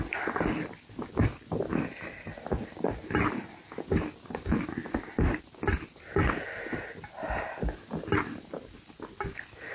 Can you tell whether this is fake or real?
real